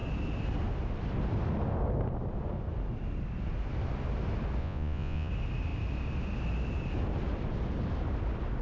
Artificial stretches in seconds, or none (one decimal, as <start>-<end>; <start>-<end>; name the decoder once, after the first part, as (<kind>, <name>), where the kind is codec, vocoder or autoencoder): 4.6-5.3 (vocoder, Vocos)